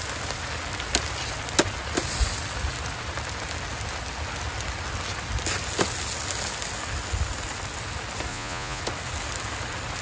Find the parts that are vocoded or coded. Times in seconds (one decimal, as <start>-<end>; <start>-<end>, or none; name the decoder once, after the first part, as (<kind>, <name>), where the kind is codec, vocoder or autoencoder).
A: 8.3-8.8 (vocoder, Vocos)